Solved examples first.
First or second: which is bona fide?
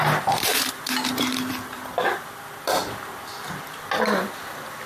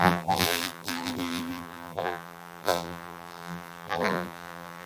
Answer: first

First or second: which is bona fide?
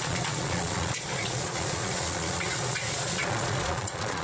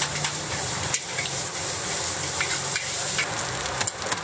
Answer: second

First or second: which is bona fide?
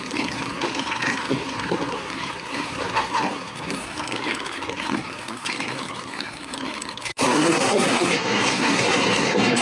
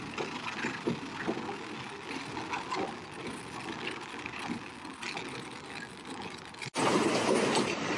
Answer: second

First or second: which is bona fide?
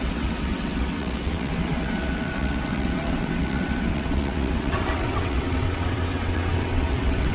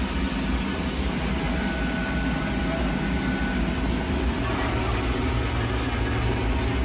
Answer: second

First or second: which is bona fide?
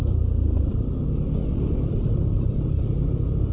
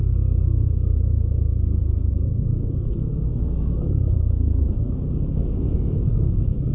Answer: first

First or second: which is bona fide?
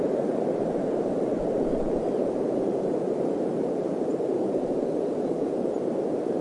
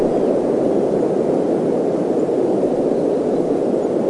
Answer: second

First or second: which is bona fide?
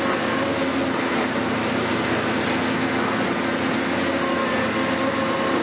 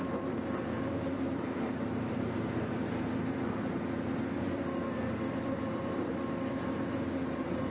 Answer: first